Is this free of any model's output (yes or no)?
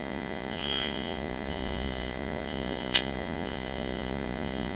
no